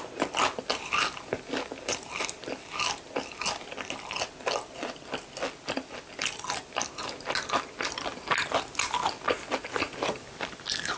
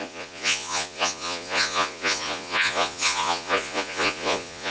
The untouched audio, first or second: first